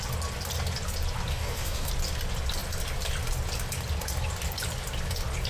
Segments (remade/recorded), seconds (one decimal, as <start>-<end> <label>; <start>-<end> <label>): 0.0-1.3 recorded; 1.3-1.9 remade; 1.9-5.5 recorded